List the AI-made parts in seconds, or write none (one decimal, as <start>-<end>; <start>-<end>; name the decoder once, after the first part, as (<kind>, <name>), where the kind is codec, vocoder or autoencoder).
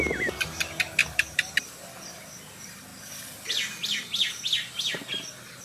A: 1.0-1.8 (vocoder, BigVGAN v2)